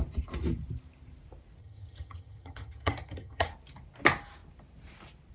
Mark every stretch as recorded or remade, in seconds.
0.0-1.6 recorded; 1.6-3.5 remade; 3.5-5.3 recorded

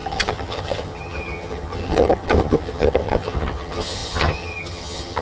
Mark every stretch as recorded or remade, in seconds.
0.0-5.2 remade